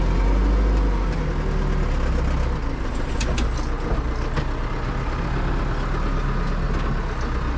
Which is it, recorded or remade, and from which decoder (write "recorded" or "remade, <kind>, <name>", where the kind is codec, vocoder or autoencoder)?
recorded